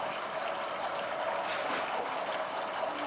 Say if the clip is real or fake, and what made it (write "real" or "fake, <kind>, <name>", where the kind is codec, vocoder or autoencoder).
real